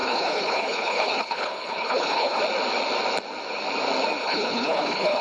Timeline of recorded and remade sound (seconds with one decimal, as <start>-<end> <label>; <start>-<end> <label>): 0.0-2.4 remade; 2.4-4.2 recorded; 4.2-5.2 remade